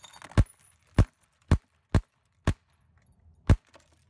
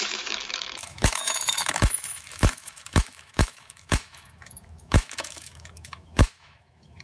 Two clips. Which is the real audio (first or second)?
first